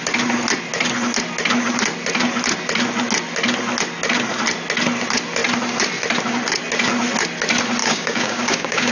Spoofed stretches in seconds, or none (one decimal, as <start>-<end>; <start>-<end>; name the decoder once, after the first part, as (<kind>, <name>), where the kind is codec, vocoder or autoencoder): 7.8-8.9 (codec, DAC)